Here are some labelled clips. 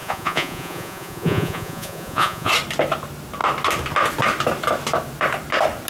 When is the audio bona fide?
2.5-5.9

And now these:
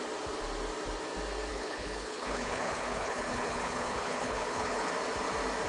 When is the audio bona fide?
0.0-1.5; 4.9-5.7

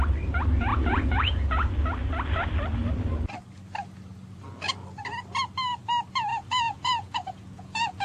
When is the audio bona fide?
0.0-0.7; 1.7-6.3

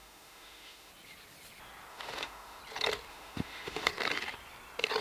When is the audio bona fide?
0.9-1.9; 2.6-3.1; 3.9-5.0